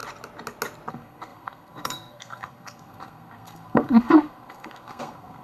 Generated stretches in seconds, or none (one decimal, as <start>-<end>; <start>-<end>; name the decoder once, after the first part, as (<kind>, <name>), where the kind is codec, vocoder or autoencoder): 0.9-5.4 (codec, SNAC)